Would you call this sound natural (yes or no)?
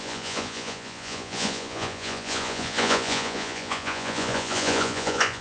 no